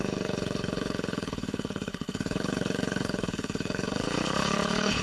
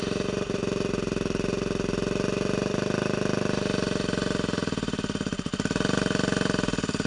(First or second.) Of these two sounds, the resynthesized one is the first